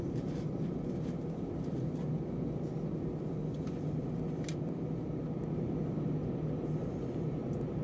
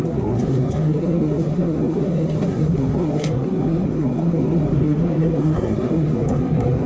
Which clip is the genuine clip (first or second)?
first